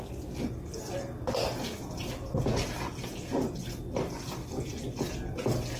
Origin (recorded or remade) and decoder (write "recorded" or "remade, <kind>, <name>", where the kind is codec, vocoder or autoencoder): recorded